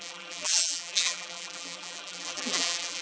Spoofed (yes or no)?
yes